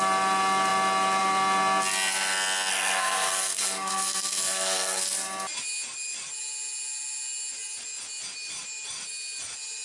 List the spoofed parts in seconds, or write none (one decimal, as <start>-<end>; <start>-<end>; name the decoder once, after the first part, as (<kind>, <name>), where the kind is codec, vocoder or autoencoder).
2.7-5.0 (codec, SNAC)